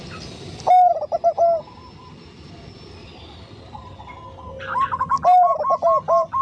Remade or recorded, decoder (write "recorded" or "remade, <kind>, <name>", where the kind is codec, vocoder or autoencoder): recorded